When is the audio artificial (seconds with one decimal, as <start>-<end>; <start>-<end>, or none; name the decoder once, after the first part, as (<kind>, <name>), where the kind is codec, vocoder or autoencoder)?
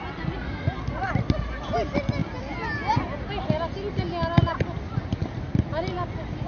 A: none